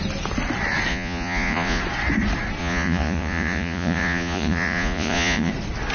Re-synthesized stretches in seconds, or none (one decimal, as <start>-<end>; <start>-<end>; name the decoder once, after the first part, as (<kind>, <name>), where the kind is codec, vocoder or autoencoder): 0.9-1.8 (vocoder, Vocos); 2.6-5.5